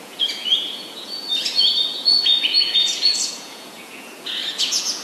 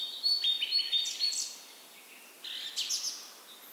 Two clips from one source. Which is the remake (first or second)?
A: first